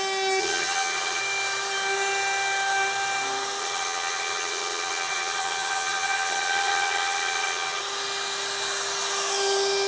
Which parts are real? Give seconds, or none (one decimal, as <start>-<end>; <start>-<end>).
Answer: 0.0-0.4; 1.2-3.6; 7.8-9.9

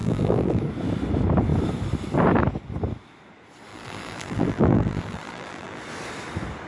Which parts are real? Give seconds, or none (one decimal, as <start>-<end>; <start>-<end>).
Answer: 0.6-3.7; 5.8-6.7